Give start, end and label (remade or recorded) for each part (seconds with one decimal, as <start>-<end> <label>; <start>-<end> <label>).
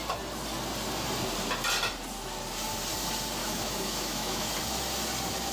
0.0-3.4 recorded; 3.4-4.5 remade; 4.5-5.5 recorded